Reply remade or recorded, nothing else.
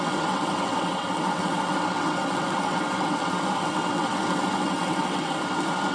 remade